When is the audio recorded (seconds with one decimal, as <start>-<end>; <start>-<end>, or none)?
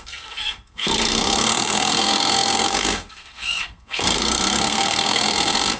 none